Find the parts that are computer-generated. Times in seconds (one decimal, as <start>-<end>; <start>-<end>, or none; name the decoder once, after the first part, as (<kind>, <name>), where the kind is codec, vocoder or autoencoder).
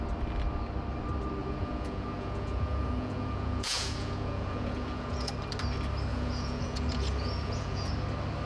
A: 1.4-5.3 (vocoder, Vocos); 6.1-7.9